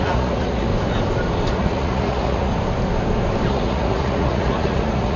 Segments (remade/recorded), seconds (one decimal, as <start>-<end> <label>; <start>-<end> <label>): 0.0-0.7 remade; 0.7-1.5 recorded; 1.5-2.5 remade; 2.5-3.5 recorded; 3.5-5.2 remade